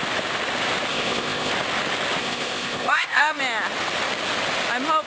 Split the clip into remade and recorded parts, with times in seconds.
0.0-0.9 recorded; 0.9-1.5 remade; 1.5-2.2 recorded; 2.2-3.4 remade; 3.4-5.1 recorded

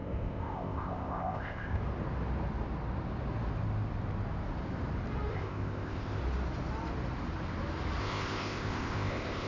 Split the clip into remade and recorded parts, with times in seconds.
0.0-1.8 remade; 1.8-5.3 recorded; 5.3-6.2 remade; 6.2-8.0 recorded; 8.0-9.5 remade

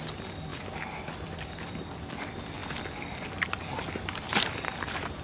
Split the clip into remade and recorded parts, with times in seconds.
0.0-5.2 recorded

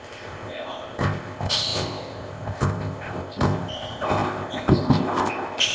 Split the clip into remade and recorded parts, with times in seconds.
0.0-5.7 remade

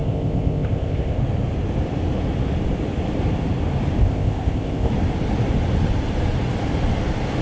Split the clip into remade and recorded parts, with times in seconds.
0.0-1.2 remade; 1.2-4.0 recorded; 4.0-4.9 remade; 4.9-7.4 recorded

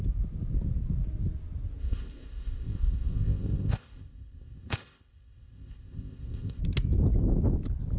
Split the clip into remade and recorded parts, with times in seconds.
0.0-1.8 recorded; 1.8-6.6 remade; 6.6-8.0 recorded

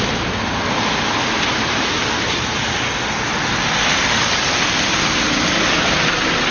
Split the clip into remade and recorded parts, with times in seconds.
0.0-6.5 recorded

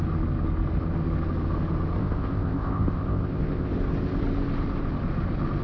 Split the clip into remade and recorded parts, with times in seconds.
0.0-2.0 recorded; 2.0-3.7 remade; 3.7-5.6 recorded